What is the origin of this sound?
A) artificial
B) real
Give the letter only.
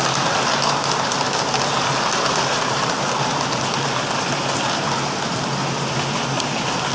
B